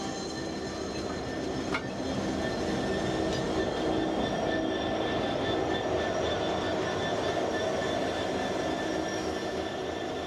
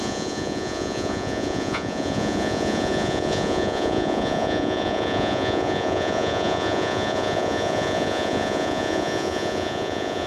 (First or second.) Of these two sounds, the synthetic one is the second